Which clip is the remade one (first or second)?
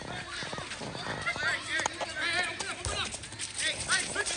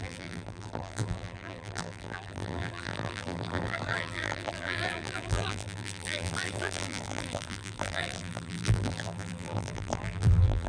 second